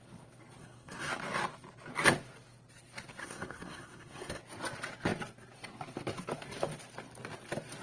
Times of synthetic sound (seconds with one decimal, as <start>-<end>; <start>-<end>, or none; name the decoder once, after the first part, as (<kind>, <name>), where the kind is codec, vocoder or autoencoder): 0.6-1.1 (codec, SNAC); 3.2-4.4